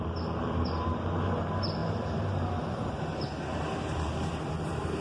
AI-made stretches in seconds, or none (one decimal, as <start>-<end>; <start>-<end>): 0.0-5.0